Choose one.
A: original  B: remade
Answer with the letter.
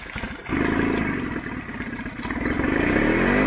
A